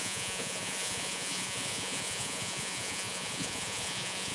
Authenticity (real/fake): fake